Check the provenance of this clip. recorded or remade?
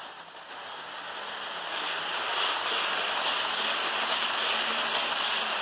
recorded